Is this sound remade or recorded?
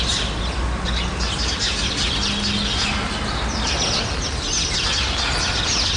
recorded